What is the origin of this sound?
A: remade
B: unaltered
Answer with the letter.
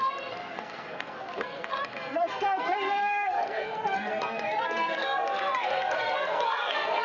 A